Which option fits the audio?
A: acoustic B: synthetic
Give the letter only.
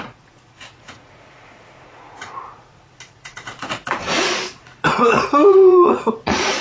B